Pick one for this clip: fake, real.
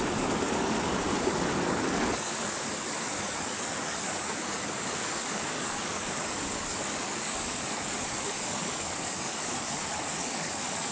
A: fake